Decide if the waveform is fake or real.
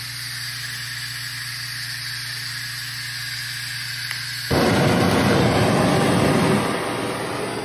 real